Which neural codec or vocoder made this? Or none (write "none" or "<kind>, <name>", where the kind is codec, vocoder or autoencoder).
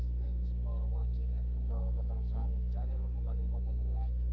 codec, SNAC